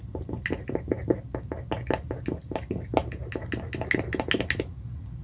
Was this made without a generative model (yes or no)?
yes